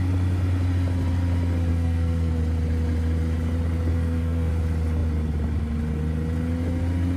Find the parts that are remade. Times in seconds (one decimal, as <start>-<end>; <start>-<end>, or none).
1.7-2.4; 3.9-4.5